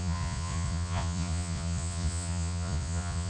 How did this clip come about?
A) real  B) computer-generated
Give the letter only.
B